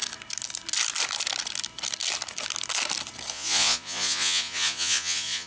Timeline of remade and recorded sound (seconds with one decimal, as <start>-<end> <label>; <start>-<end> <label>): 0.0-3.3 recorded; 3.3-5.5 remade